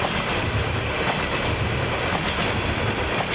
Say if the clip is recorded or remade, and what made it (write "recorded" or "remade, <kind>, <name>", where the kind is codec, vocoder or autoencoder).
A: recorded